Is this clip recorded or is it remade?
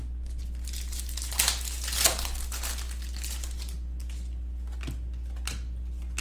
recorded